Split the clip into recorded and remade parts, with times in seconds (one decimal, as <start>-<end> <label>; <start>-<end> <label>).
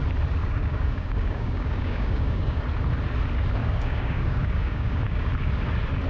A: 0.0-0.4 recorded; 0.4-2.6 remade; 2.6-3.6 recorded; 3.6-5.3 remade; 5.3-6.1 recorded